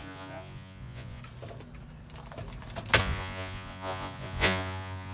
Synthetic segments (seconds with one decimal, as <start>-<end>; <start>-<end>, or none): 0.0-1.2; 3.0-5.1